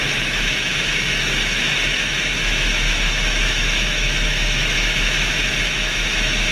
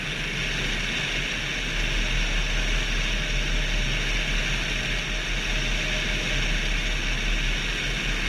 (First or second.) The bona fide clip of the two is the second